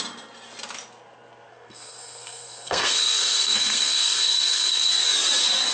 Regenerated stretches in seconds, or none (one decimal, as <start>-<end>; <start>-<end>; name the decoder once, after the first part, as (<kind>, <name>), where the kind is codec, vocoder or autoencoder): 1.5-4.9 (codec, SNAC)